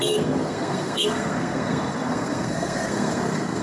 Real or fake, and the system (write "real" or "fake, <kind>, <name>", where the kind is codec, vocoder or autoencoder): fake, codec, SNAC